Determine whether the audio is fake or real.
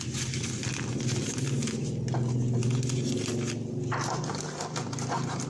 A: real